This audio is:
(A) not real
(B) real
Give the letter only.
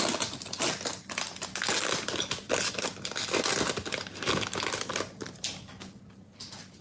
B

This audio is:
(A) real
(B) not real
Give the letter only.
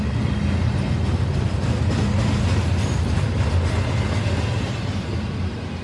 A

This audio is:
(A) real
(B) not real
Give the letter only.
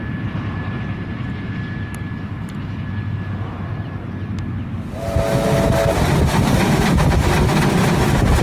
A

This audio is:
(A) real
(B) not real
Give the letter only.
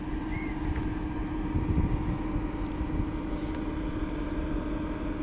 A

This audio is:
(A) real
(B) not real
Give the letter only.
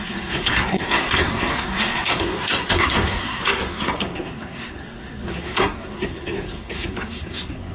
B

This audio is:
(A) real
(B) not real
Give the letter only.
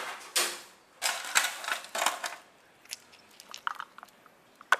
A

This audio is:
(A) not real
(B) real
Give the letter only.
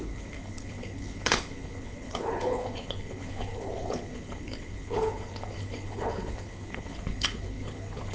A